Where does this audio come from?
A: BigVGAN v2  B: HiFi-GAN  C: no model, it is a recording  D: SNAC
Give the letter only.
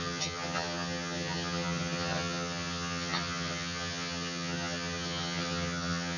B